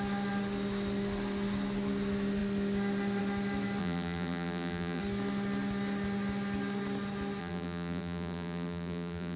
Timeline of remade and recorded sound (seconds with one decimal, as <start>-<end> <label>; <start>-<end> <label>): 0.0-3.8 recorded; 3.8-5.0 remade; 5.0-7.4 recorded; 7.4-9.4 remade